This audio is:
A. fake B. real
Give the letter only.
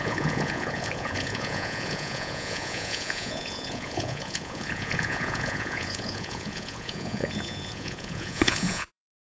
A